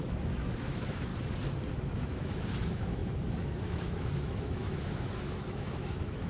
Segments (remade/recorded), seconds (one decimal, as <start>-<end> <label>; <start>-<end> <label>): 0.0-1.1 remade; 1.1-1.7 recorded; 1.7-6.3 remade